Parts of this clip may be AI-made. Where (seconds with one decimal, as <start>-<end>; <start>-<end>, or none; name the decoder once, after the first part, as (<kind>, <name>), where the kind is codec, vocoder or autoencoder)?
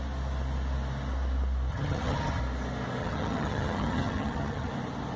1.7-2.4 (vocoder, HiFi-GAN); 3.0-4.7